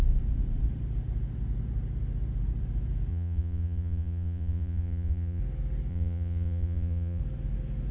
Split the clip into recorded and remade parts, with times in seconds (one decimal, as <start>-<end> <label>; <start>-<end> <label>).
0.0-3.1 recorded; 3.1-5.4 remade; 5.4-5.9 recorded; 5.9-7.2 remade; 7.2-7.9 recorded